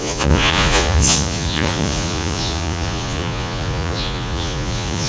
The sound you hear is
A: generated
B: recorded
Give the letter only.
A